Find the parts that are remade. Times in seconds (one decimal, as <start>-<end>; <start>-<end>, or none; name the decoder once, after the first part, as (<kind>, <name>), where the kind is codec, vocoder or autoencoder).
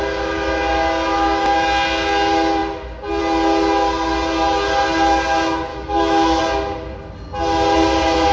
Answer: 5.7-6.4 (autoencoder, DAC-VAE)